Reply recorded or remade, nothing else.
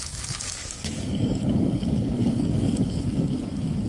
remade